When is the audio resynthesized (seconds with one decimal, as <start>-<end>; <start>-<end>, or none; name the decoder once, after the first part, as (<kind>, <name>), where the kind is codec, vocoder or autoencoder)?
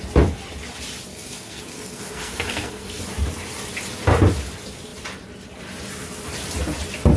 1.1-3.0 (codec, SNAC)